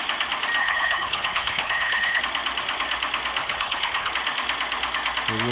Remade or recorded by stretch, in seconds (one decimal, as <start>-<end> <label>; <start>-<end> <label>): 0.0-0.6 recorded; 0.6-2.2 remade; 2.2-3.4 recorded; 3.4-4.1 remade; 4.1-5.5 recorded